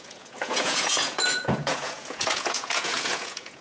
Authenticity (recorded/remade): remade